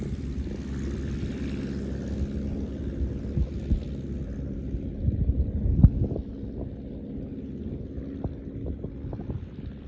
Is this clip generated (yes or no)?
no